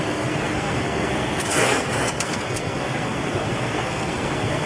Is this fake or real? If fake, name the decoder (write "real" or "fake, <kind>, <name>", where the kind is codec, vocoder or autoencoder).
fake, codec, SNAC